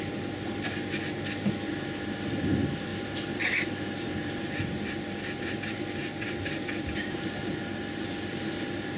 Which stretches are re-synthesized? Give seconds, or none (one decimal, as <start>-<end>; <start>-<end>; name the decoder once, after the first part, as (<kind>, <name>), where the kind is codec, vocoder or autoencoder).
none